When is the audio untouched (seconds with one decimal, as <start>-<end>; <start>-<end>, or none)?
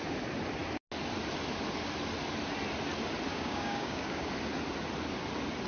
0.0-3.3; 4.3-5.7